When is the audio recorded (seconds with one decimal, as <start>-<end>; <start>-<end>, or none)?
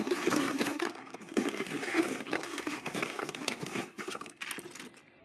4.4-5.2